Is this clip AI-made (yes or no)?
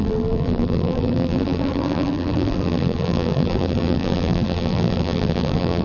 yes